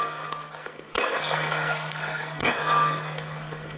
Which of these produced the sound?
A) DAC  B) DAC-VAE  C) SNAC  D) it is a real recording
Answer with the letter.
C